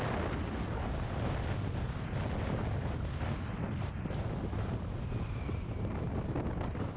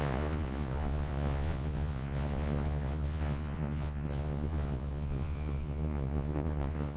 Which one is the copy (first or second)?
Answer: second